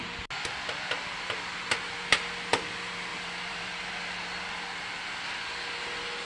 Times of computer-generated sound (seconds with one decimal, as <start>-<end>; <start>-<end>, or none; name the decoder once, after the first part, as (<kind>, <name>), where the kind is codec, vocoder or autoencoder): 3.1-3.8 (vocoder, BigVGAN v2)